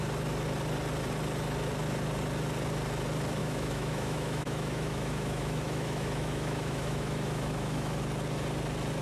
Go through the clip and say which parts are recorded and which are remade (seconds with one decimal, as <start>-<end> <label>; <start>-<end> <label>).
0.0-3.4 recorded; 3.4-8.0 remade; 8.0-9.0 recorded